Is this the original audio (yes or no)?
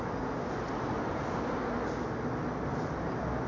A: yes